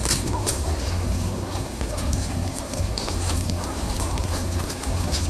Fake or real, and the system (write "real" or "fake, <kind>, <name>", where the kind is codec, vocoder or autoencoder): fake, codec, SNAC